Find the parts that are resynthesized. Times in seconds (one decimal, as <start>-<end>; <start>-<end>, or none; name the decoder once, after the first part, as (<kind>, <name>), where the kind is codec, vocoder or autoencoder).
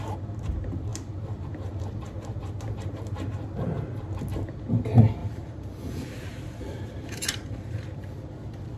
5.2-7.7 (vocoder, BigVGAN v2)